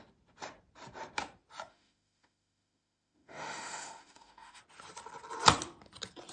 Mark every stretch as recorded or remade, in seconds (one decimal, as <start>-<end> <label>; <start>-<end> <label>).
0.0-1.7 recorded; 1.7-4.6 remade; 4.6-6.3 recorded